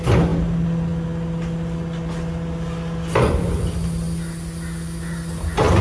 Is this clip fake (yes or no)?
no